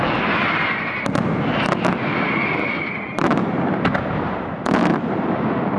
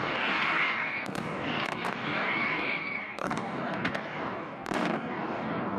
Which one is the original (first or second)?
first